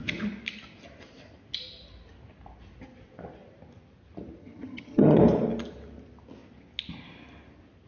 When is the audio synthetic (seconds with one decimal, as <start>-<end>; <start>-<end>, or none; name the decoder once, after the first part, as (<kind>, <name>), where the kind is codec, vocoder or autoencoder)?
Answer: 4.4-5.2 (vocoder, HiFi-GAN)

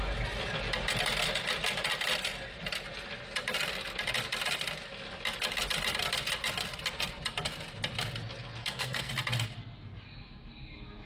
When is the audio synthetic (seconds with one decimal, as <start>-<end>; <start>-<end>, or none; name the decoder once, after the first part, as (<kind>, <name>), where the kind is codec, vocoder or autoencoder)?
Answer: 8.6-9.1 (codec, SNAC)

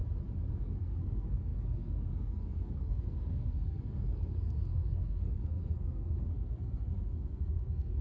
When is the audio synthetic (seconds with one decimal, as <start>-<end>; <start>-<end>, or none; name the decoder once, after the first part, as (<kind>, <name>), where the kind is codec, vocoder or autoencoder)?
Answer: 0.5-8.0 (codec, SNAC)

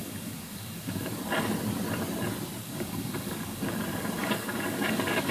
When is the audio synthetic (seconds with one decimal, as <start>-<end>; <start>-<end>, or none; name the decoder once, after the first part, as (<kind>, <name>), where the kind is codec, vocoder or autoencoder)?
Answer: 0.0-1.2 (codec, DAC); 2.6-3.8; 4.2-5.3

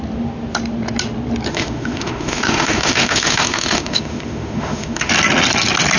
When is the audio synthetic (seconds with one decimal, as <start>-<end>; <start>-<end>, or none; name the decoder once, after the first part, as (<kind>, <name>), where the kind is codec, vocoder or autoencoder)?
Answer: 1.5-5.1 (autoencoder, DAC-VAE)